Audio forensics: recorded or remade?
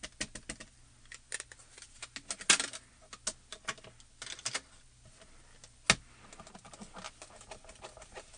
recorded